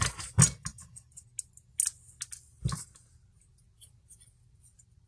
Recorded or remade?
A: recorded